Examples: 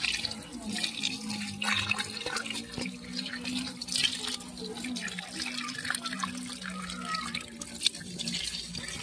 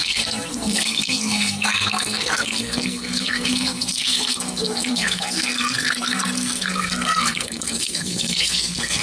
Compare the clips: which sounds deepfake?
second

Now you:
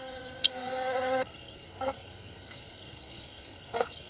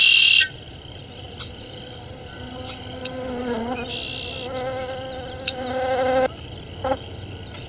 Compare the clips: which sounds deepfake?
first